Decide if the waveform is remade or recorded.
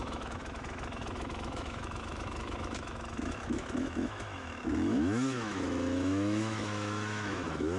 remade